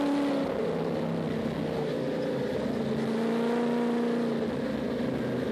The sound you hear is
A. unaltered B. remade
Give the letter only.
A